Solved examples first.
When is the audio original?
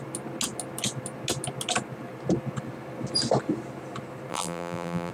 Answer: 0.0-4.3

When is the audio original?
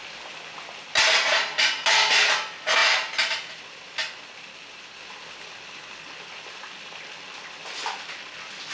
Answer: 0.0-8.7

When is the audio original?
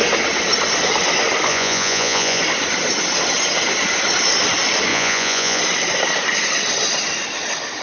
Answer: 0.0-1.5; 2.4-4.9; 5.6-7.8